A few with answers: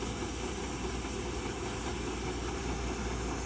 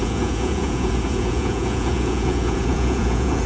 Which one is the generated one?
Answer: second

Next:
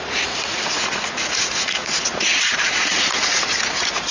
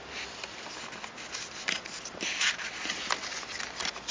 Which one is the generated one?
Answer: first